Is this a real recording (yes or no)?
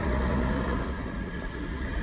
no